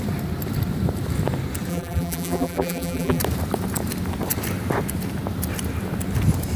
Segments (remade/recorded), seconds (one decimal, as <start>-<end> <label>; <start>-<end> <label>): 0.0-1.7 recorded; 1.7-3.2 remade; 3.2-6.6 recorded